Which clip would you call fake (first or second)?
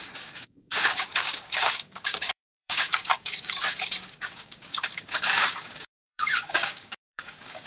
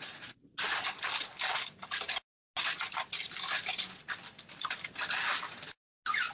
first